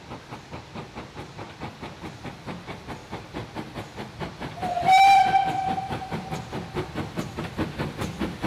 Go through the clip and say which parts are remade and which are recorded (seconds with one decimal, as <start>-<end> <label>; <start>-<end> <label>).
0.0-8.5 recorded